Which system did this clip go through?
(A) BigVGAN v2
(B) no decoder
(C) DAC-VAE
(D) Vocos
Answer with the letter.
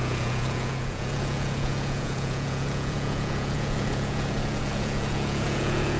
D